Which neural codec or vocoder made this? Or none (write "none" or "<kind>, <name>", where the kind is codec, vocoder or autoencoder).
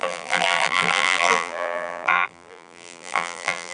vocoder, BigVGAN v2